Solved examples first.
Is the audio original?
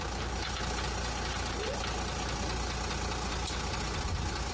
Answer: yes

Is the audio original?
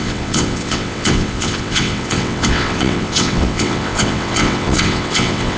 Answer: no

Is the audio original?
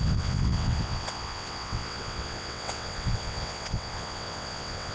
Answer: no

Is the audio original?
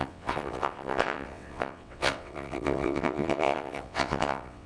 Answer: no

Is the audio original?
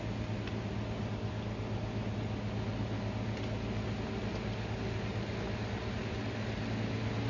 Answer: yes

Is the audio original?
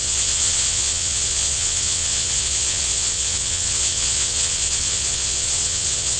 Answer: no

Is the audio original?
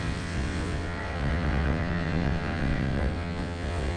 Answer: no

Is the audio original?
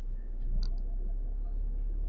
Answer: yes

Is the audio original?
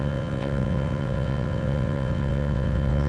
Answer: no